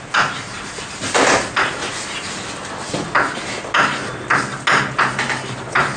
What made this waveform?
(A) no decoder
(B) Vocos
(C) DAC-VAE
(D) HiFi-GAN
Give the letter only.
A